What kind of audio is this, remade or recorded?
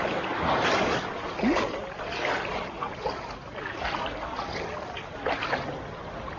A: recorded